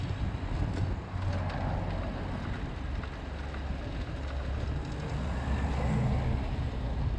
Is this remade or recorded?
recorded